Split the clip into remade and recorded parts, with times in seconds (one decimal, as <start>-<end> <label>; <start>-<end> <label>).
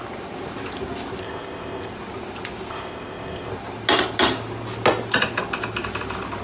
0.0-1.2 recorded; 1.2-1.9 remade; 1.9-2.7 recorded; 2.7-3.5 remade; 3.5-6.4 recorded